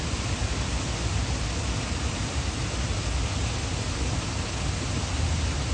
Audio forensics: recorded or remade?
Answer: recorded